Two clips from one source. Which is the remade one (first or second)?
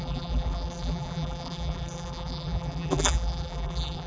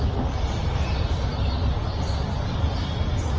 first